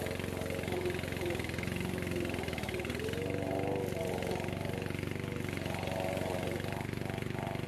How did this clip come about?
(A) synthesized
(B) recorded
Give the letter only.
B